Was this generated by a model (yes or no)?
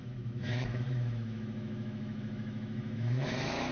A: yes